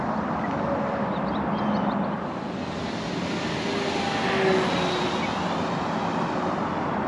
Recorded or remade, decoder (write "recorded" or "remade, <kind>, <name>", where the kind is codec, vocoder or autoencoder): recorded